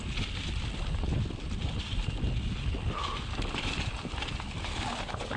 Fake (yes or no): no